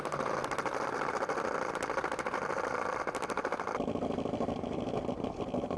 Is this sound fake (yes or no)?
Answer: no